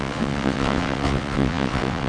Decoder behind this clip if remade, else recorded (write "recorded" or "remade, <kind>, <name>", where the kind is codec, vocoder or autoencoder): remade, vocoder, WaveNeXt